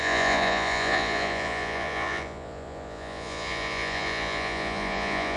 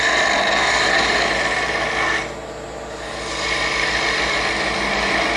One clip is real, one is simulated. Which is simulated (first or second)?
first